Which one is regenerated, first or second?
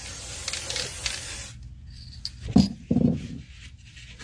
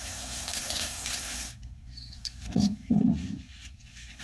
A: second